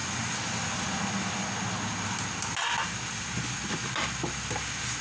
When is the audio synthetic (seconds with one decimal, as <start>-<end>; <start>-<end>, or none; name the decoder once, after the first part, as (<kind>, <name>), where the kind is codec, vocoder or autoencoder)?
none